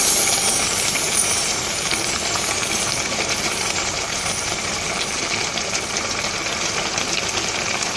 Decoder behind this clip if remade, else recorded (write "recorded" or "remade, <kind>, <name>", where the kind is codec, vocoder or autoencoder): remade, vocoder, BigVGAN v2